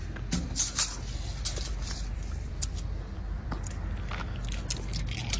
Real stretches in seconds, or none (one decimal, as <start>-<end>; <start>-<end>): 0.0-1.7; 3.5-5.4